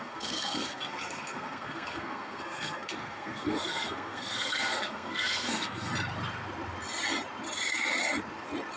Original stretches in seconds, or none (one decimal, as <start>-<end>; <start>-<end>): 5.9-8.8